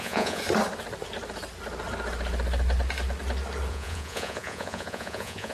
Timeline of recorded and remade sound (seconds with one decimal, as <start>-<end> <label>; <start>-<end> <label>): 0.0-0.4 remade; 0.4-3.7 recorded; 3.7-5.5 remade